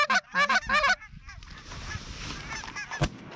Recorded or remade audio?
recorded